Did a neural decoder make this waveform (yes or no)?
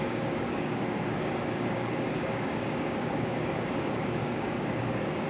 yes